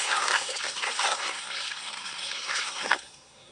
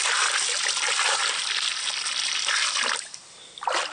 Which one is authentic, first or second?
second